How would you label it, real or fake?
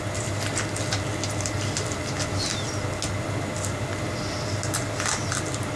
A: real